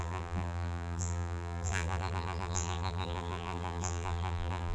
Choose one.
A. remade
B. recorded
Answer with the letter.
A